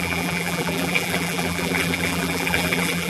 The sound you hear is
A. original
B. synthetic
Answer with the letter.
B